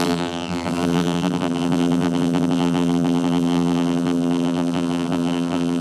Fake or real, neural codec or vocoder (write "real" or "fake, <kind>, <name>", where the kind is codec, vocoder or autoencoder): fake, vocoder, BigVGAN v2